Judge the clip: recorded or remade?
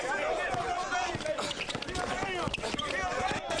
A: recorded